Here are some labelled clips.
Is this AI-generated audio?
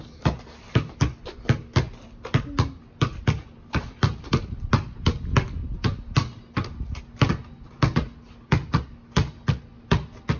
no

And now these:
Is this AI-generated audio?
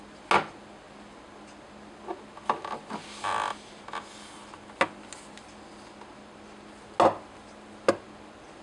no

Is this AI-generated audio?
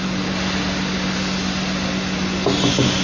no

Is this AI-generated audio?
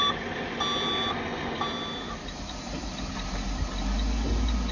no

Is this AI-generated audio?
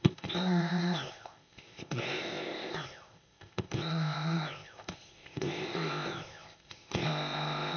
yes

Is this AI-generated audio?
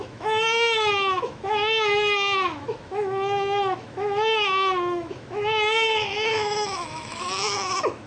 yes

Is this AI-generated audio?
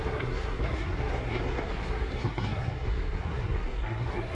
yes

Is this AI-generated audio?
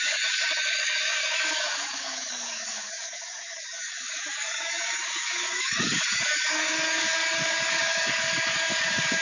yes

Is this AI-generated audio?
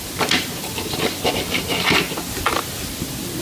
no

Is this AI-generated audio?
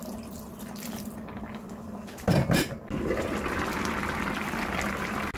no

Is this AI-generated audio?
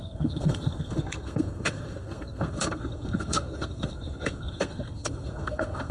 yes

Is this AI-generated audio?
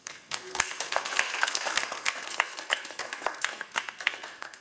yes